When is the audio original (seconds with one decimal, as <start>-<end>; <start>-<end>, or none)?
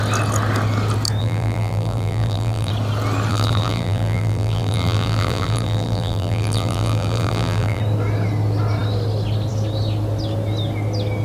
0.0-1.2; 2.7-3.3; 7.8-11.2